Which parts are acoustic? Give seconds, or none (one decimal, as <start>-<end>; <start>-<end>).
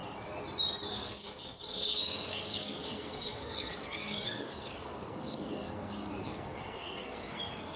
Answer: 0.0-0.9